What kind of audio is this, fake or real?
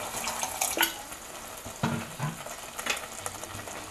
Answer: real